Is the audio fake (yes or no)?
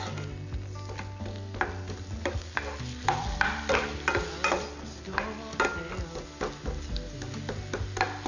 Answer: no